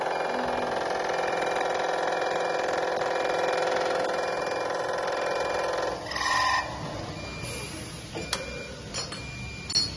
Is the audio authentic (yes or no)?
yes